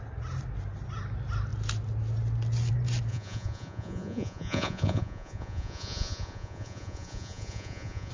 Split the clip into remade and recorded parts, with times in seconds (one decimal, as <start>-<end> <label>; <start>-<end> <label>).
0.0-3.1 recorded; 3.1-8.1 remade